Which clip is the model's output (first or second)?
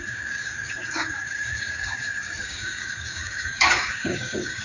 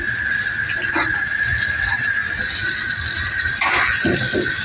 first